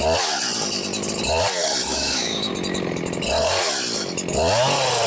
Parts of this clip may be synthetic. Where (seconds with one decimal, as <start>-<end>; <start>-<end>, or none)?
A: 1.9-2.5